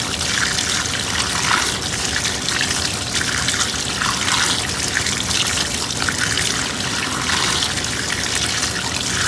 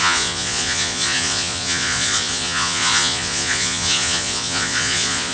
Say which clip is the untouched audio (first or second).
first